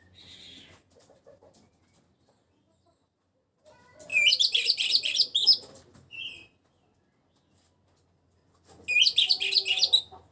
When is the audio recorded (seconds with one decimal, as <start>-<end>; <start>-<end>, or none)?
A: 0.0-10.3